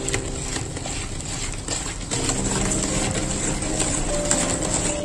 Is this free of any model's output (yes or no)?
yes